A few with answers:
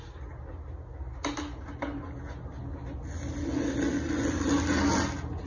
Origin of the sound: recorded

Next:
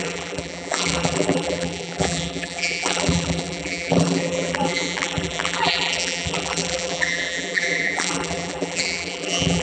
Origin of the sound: remade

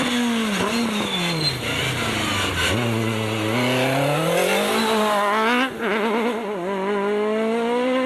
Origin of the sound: recorded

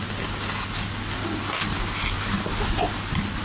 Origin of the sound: recorded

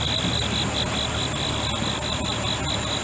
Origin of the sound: recorded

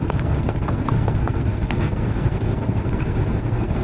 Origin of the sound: remade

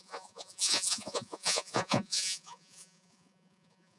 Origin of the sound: remade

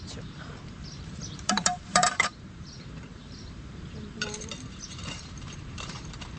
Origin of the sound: remade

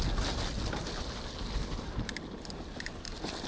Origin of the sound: recorded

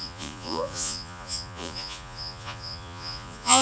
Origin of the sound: remade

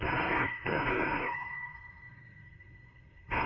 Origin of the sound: remade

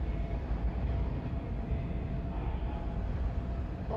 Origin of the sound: recorded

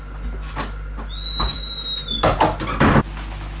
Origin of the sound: recorded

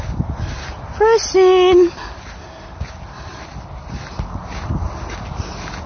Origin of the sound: recorded